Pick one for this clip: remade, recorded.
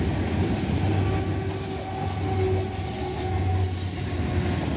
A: recorded